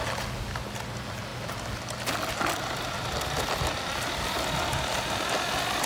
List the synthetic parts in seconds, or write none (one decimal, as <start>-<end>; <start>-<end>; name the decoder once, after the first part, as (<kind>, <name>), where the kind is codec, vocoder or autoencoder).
none